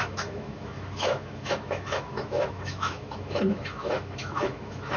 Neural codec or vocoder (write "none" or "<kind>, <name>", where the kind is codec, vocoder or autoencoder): autoencoder, DAC-VAE